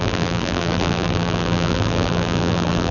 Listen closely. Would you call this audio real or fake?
fake